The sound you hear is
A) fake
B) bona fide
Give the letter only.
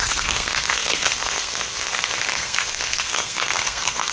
A